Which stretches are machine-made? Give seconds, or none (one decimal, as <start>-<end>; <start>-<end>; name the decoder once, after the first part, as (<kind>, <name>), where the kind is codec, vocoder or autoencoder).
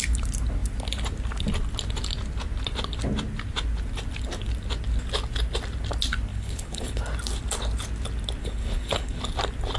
6.3-7.0 (codec, HILCodec); 8.4-9.2